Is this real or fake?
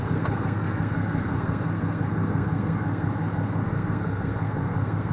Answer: fake